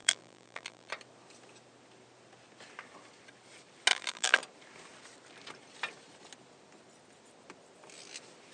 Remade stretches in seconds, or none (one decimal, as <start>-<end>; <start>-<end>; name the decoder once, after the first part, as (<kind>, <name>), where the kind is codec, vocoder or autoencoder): 0.0-0.9 (vocoder, BigVGAN v2); 3.9-4.4